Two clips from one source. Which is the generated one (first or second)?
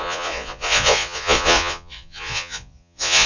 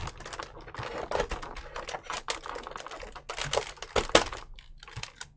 first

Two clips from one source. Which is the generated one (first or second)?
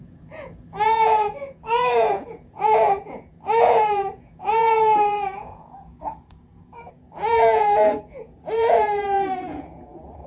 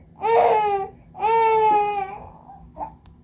first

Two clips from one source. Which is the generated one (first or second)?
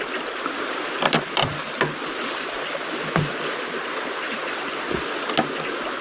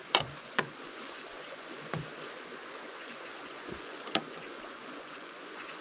second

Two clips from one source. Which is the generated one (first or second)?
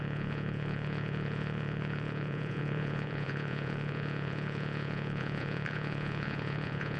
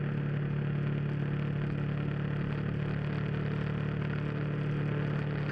first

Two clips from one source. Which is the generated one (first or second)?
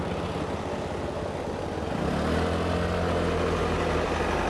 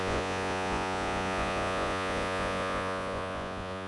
second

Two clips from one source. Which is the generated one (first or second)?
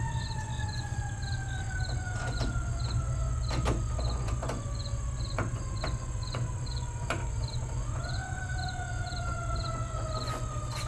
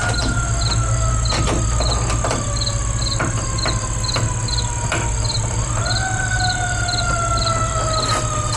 first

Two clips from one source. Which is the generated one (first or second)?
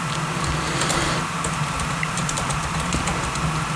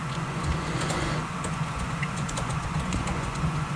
second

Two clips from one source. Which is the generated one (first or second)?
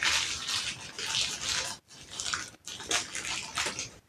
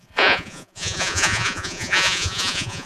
second